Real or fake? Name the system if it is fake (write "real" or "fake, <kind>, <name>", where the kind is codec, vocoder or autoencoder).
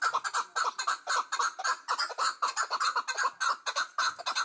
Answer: real